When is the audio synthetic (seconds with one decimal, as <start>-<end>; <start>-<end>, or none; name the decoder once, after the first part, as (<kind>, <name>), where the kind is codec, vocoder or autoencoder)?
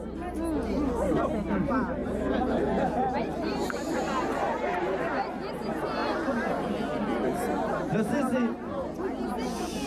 2.0-5.0 (vocoder, BigVGAN v2); 6.0-6.7